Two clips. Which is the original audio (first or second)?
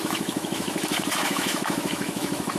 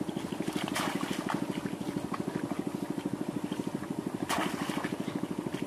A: second